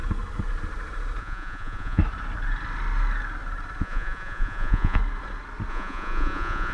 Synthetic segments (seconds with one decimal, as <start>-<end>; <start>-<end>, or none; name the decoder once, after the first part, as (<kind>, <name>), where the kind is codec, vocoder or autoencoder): 1.2-2.0 (vocoder, Vocos); 3.8-5.0; 5.7-6.7